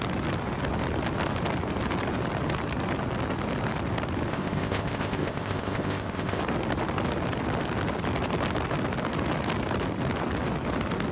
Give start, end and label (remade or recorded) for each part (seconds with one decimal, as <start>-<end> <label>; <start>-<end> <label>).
0.0-4.3 recorded; 4.3-6.4 remade; 6.4-11.1 recorded